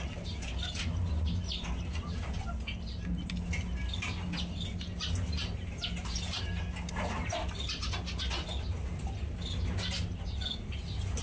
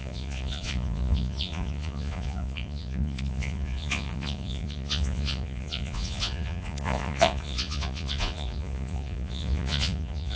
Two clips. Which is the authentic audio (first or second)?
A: first